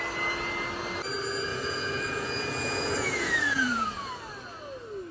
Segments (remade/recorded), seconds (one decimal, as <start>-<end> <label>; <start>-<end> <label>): 0.0-1.5 recorded; 1.5-4.1 remade; 4.1-5.1 recorded